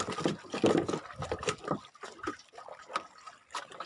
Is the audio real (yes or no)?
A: yes